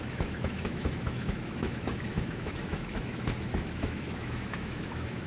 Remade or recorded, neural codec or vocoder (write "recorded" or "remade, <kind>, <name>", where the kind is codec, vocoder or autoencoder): remade, autoencoder, DAC-VAE